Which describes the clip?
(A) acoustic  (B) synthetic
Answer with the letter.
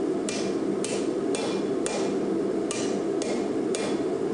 A